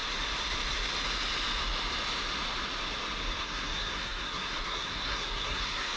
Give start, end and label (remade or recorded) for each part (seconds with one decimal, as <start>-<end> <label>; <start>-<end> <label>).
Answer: 0.0-3.4 recorded; 3.4-6.0 remade